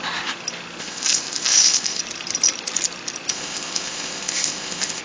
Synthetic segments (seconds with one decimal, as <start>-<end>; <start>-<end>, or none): 0.8-2.0; 3.3-5.0

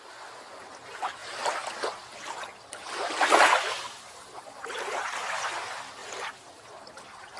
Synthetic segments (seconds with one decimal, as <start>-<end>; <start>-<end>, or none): none

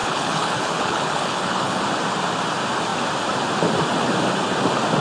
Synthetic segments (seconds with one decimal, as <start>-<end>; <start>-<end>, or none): 0.0-1.8